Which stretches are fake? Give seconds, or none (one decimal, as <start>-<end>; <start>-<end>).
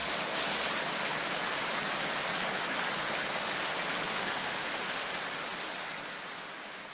4.1-5.1